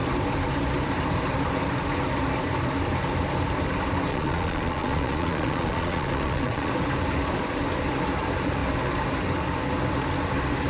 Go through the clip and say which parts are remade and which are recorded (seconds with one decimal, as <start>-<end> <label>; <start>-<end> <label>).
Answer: 0.0-4.1 recorded; 4.1-6.7 remade; 6.7-10.7 recorded